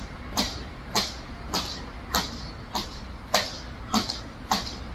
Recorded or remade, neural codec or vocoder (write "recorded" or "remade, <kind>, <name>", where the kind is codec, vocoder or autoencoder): recorded